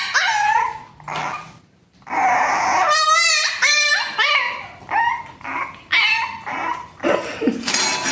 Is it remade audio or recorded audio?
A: recorded